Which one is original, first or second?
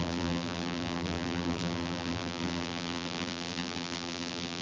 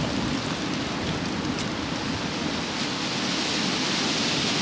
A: second